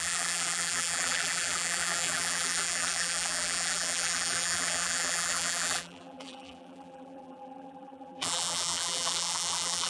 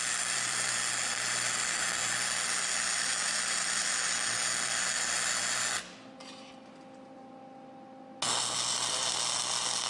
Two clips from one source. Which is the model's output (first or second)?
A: first